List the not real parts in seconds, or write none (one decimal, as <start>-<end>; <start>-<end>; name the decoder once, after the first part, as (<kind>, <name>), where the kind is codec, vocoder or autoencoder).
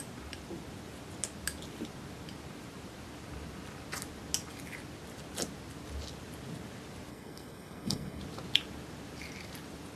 7.1-8.2 (codec, SNAC)